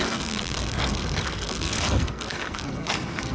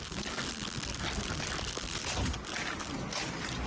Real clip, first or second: second